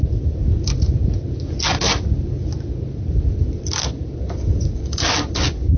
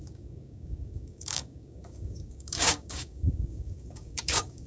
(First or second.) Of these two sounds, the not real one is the second